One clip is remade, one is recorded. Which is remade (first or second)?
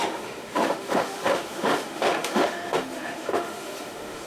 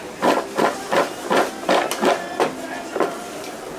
first